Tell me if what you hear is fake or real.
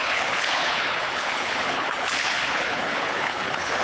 fake